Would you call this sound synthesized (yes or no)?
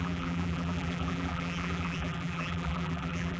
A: yes